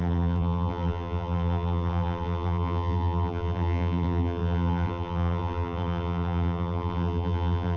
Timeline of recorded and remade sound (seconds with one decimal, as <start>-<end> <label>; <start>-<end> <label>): 0.0-7.8 remade